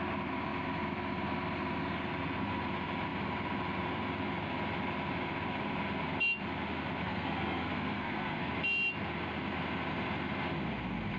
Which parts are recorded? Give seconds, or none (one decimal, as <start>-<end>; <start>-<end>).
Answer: 0.0-7.0; 8.5-11.2